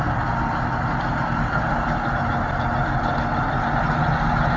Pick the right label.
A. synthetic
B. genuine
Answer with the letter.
B